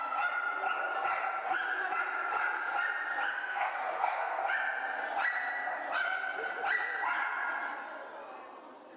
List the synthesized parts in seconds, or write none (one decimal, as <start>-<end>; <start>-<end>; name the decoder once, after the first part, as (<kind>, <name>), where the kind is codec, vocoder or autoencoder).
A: 3.3-4.4 (codec, SNAC)